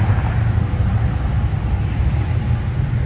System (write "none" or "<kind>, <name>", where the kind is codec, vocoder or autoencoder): none